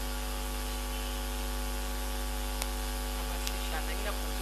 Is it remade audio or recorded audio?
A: recorded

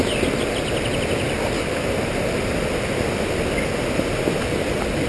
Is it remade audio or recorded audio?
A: recorded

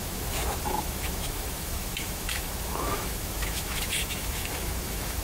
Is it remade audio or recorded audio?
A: remade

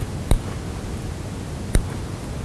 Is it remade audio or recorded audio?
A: recorded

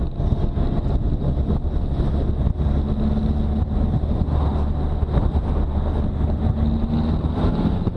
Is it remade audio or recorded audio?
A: recorded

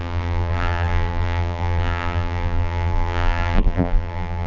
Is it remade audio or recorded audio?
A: remade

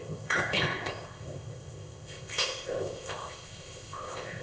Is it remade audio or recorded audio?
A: remade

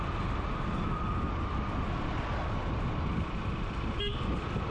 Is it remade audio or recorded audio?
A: recorded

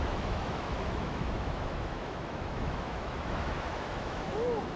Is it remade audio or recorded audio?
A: remade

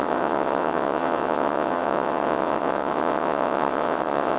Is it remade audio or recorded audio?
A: remade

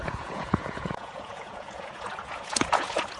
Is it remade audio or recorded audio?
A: remade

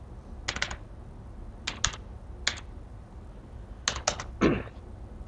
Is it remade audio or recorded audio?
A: recorded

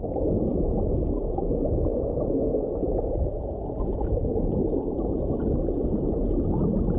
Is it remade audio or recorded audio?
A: recorded